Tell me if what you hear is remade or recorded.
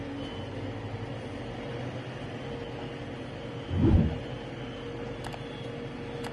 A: recorded